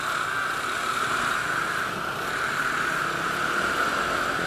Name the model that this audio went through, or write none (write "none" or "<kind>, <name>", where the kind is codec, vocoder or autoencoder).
none